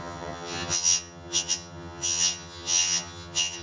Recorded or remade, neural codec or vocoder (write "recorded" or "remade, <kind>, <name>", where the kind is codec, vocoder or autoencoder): remade, vocoder, HiFi-GAN